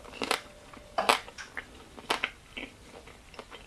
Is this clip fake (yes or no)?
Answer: no